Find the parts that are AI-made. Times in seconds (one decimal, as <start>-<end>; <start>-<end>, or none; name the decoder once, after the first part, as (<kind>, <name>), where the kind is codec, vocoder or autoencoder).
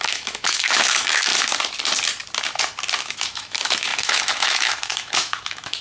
0.0-1.3 (autoencoder, DAC-VAE); 3.0-5.8